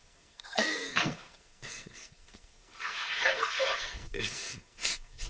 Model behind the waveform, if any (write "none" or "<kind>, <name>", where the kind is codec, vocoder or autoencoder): codec, SNAC